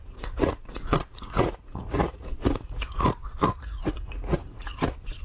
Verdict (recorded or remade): remade